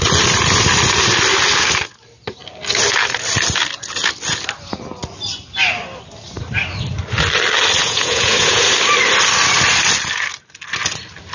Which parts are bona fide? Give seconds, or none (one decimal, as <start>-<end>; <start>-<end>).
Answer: 0.0-7.8; 8.6-11.3